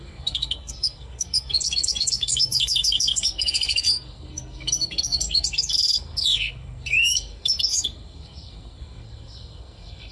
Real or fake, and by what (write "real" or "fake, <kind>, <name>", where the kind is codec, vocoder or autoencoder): fake, codec, SNAC